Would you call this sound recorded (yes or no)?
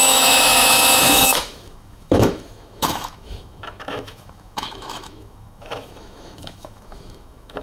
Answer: no